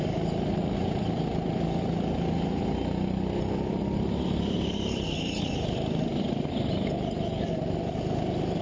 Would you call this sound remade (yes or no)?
no